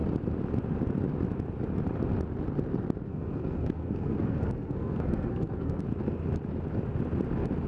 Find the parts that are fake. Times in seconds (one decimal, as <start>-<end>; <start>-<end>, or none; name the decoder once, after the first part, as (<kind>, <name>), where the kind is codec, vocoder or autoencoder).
3.1-5.8 (codec, SNAC)